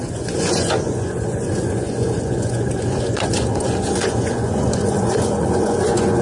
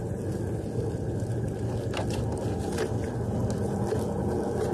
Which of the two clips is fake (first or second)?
first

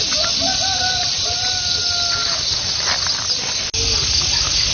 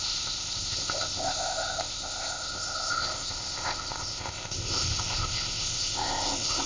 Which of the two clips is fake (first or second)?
second